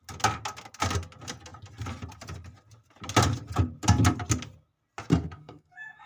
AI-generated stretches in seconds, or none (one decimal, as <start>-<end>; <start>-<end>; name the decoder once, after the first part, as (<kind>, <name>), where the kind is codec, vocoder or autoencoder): 5.1-6.1 (codec, SNAC)